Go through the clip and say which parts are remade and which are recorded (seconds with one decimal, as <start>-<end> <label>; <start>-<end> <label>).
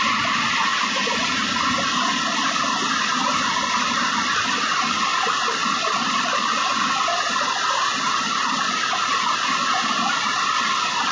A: 0.0-11.1 recorded